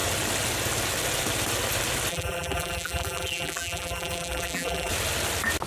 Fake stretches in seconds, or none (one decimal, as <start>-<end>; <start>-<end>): 2.1-4.9